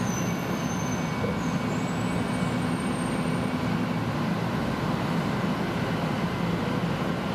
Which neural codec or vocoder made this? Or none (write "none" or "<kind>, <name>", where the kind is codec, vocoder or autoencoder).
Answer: none